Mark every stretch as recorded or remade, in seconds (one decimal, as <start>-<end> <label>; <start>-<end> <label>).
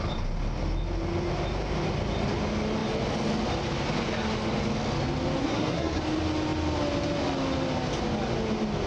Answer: 0.0-5.4 recorded; 5.4-6.0 remade; 6.0-8.9 recorded